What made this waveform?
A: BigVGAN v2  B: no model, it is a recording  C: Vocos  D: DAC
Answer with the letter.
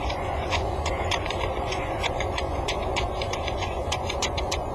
C